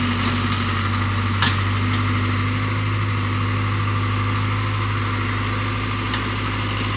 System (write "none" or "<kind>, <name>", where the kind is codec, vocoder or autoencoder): none